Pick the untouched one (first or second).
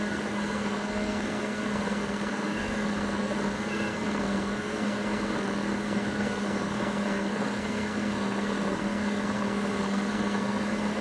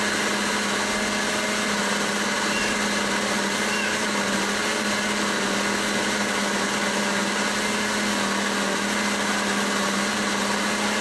second